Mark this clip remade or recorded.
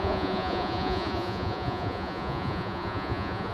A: remade